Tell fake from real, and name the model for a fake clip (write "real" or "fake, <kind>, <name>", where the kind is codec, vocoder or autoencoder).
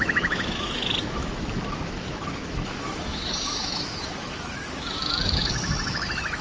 fake, autoencoder, DAC-VAE